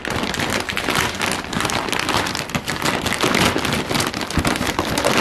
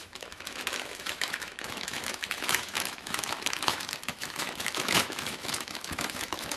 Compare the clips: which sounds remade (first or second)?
second